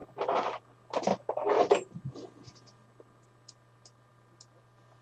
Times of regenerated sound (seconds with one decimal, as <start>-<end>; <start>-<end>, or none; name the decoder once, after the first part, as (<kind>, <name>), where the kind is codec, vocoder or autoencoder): none